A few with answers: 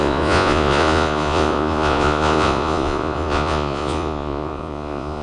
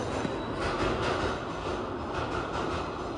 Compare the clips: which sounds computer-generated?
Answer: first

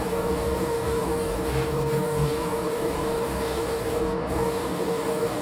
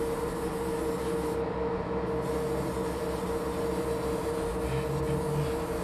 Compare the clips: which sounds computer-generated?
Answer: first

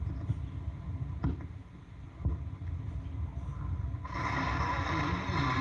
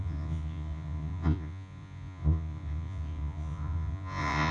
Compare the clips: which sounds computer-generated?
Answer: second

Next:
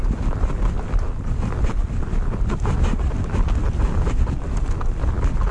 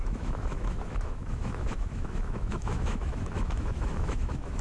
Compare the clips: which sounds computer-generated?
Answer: second